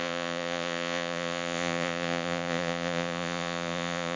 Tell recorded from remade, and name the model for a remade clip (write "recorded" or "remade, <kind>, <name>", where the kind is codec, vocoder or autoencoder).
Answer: remade, vocoder, Vocos